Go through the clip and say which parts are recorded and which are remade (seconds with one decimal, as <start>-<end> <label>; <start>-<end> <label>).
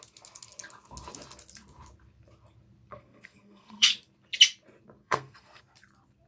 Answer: 0.0-2.9 recorded; 2.9-3.9 remade; 3.9-5.0 recorded; 5.0-5.6 remade; 5.6-6.3 recorded